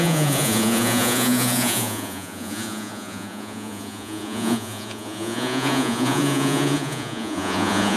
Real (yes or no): no